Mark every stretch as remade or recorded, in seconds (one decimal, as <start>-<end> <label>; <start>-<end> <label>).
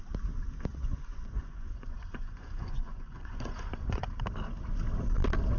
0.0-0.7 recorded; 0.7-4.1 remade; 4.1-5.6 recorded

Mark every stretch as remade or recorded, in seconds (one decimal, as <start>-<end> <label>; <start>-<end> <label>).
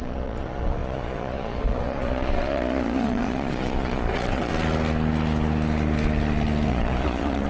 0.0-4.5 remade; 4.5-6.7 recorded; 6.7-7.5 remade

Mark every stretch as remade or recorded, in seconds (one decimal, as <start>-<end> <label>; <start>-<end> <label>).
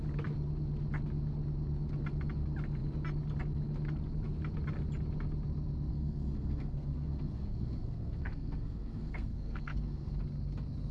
0.0-5.9 recorded; 5.9-10.2 remade; 10.2-10.9 recorded